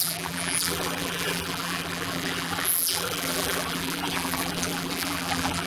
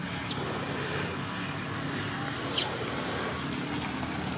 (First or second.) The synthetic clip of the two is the first